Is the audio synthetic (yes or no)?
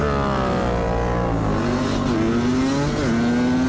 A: no